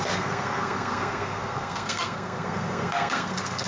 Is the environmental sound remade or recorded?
remade